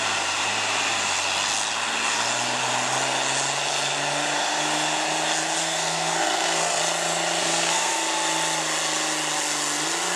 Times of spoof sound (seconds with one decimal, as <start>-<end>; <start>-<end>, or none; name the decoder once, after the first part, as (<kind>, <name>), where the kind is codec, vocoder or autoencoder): 5.6-6.8 (codec, SNAC); 7.4-7.9